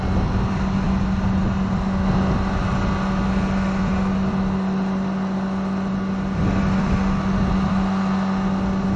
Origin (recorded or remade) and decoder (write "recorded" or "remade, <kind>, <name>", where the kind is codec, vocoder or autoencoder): recorded